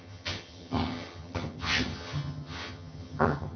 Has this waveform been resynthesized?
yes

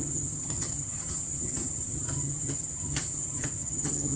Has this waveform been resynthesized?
yes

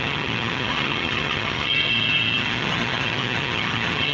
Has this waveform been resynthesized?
yes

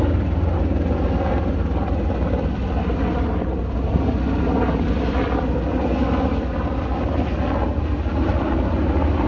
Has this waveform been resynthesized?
no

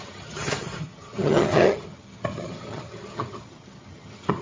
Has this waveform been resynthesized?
yes